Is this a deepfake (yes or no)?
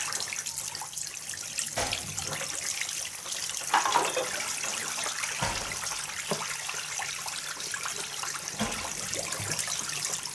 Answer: yes